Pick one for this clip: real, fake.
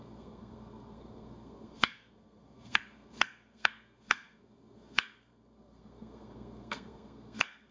fake